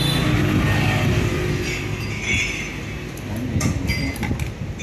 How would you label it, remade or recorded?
recorded